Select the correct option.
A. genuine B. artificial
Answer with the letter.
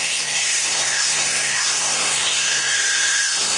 B